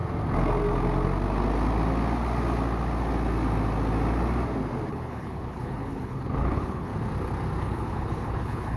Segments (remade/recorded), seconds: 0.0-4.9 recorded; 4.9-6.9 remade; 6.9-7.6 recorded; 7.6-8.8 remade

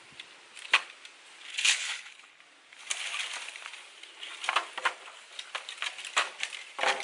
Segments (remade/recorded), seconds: 0.0-1.5 recorded; 1.5-2.4 remade; 2.4-7.0 recorded

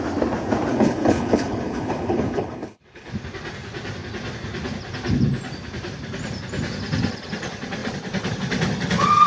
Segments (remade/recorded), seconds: 0.0-0.7 recorded; 0.7-3.1 remade; 3.1-9.3 recorded

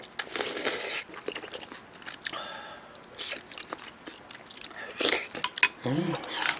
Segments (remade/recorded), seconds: 0.0-6.6 recorded

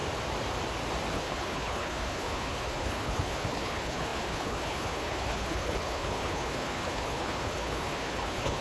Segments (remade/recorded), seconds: 0.0-1.1 recorded; 1.1-8.6 remade

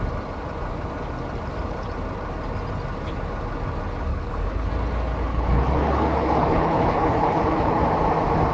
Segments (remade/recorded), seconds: 0.0-4.1 recorded; 4.1-4.7 remade; 4.7-5.3 recorded; 5.3-7.8 remade; 7.8-8.5 recorded

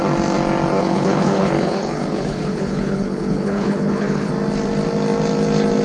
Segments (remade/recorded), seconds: 0.0-0.8 recorded; 0.8-4.3 remade; 4.3-5.8 recorded